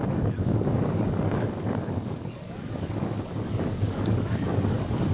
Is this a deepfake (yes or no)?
yes